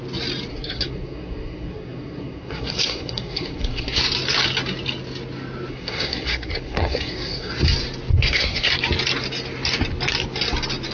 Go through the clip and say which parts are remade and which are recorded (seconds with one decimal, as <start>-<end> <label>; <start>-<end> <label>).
0.0-0.5 recorded; 0.5-4.0 remade; 4.0-5.7 recorded; 5.7-7.5 remade; 7.5-8.1 recorded; 8.1-8.7 remade; 8.7-10.9 recorded